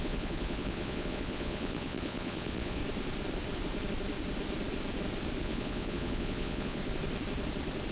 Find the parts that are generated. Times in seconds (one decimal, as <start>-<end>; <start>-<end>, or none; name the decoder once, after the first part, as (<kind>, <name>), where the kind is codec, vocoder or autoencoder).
0.0-2.8 (vocoder, Vocos); 5.4-6.8